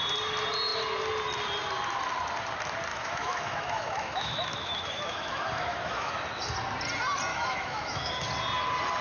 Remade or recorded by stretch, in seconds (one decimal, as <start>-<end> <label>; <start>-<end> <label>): 0.0-2.9 recorded; 2.9-6.1 remade; 6.1-7.3 recorded; 7.3-8.1 remade; 8.1-9.0 recorded